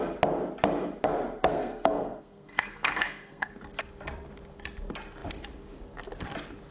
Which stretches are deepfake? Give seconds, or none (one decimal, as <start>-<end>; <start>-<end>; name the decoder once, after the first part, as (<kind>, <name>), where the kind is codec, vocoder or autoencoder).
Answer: 1.4-3.5 (codec, SNAC)